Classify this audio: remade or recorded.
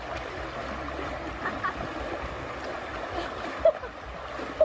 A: recorded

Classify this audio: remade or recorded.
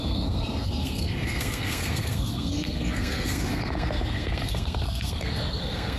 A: remade